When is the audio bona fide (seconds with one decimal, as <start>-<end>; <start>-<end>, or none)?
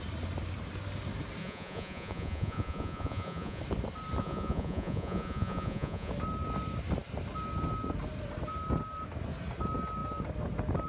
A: 0.0-1.4; 3.6-4.2; 6.1-10.9